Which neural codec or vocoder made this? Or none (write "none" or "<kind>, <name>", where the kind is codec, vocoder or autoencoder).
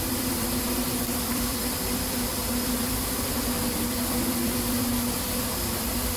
vocoder, BigVGAN v2